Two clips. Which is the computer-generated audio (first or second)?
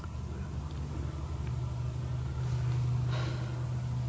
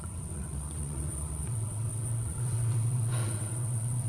second